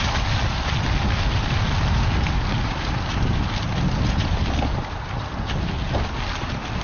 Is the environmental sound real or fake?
real